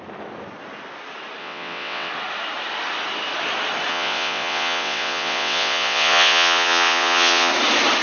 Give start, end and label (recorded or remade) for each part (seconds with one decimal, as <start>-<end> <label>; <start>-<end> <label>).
0.0-1.4 recorded; 1.4-2.1 remade; 2.1-3.9 recorded; 3.9-7.5 remade; 7.5-8.0 recorded

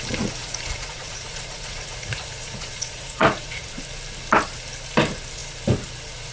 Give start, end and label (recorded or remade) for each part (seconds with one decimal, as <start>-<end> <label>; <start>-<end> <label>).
0.0-0.4 recorded; 0.4-3.8 remade; 3.8-6.3 recorded

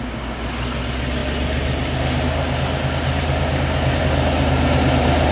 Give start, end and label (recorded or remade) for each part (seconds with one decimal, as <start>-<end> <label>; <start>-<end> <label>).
0.0-5.3 recorded

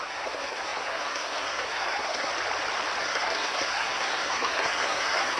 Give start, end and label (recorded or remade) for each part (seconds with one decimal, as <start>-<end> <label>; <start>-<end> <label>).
0.0-2.3 remade; 2.3-3.0 recorded; 3.0-5.4 remade

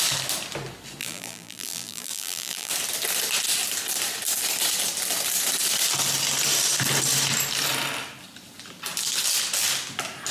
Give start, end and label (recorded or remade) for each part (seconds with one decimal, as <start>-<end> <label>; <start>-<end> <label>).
0.0-1.0 recorded; 1.0-2.7 remade; 2.7-10.3 recorded

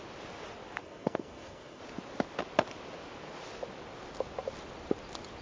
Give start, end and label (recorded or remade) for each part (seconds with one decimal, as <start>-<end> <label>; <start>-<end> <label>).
0.0-0.8 recorded; 0.8-1.8 remade; 1.8-5.4 recorded

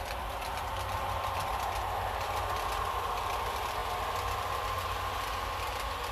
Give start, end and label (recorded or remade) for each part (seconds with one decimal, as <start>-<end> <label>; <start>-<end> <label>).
0.0-6.1 recorded